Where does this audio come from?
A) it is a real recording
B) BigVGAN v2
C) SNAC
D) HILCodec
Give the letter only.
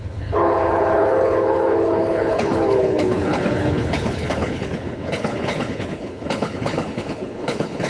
D